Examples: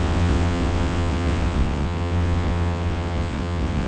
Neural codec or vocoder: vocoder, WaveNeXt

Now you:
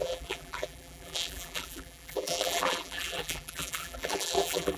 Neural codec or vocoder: vocoder, BigVGAN v2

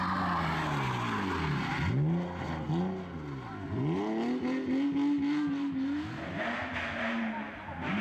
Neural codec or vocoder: none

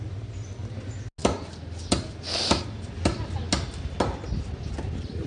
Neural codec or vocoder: none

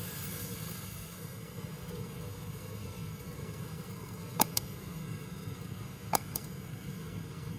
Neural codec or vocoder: codec, SNAC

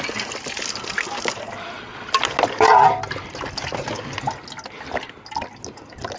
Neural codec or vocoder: none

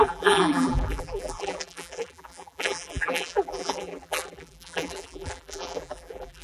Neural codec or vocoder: vocoder, BigVGAN v2